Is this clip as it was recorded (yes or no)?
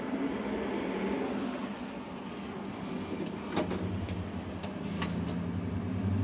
yes